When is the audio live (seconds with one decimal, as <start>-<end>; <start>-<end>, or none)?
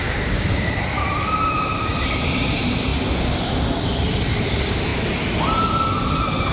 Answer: 1.9-2.5; 2.9-4.3; 4.9-6.0